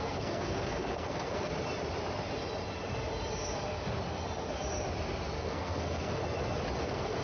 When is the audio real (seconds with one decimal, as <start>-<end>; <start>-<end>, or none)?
1.5-5.4; 6.2-6.8